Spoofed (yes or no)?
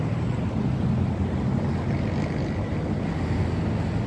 no